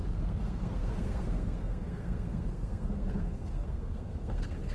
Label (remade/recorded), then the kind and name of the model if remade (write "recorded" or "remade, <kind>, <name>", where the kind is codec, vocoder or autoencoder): remade, codec, SNAC